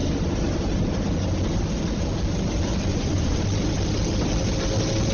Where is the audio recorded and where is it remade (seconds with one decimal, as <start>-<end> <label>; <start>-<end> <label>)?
0.0-2.9 recorded; 2.9-3.4 remade; 3.4-5.1 recorded